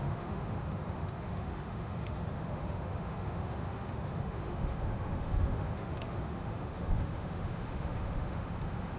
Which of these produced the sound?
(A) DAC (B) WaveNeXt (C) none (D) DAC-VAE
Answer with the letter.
D